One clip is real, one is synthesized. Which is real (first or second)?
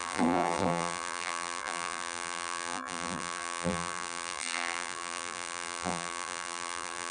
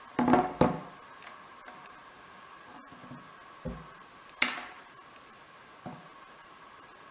second